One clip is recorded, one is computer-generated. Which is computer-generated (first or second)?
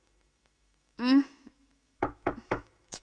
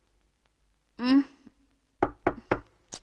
first